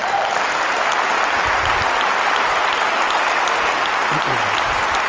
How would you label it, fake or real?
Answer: real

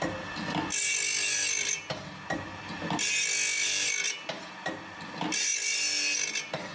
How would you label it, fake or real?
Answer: real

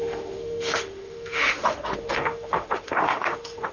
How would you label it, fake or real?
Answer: fake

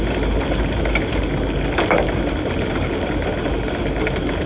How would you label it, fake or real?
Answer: real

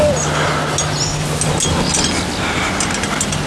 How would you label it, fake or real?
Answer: real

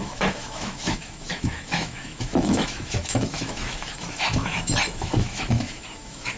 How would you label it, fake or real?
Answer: fake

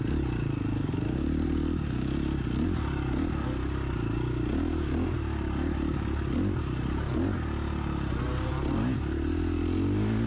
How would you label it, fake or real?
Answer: real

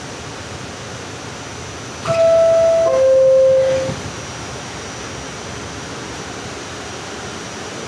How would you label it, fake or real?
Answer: real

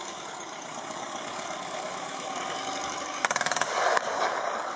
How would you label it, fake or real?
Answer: fake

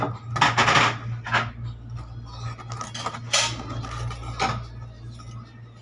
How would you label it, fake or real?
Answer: real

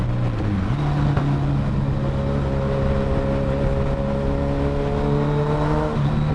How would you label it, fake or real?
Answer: real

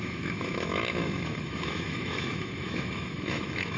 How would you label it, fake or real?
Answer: fake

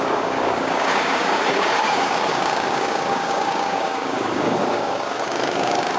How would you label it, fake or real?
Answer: fake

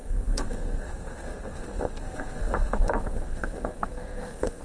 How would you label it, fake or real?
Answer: fake